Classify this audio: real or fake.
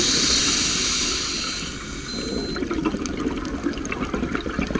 real